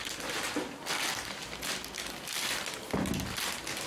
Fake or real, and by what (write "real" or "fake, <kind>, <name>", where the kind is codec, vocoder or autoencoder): real